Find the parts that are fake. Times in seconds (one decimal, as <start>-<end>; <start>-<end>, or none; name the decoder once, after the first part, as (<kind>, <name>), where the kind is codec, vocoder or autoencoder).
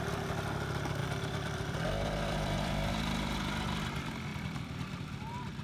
1.0-2.9 (vocoder, BigVGAN v2); 4.3-5.0